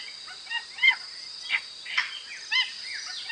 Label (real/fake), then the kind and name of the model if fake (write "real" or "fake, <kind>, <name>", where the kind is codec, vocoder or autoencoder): real